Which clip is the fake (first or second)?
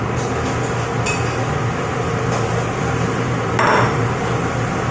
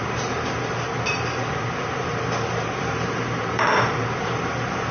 second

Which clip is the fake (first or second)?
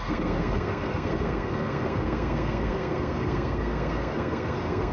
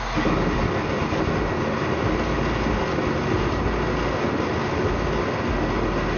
first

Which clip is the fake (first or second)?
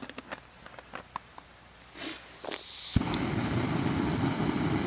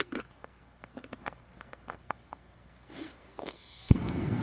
second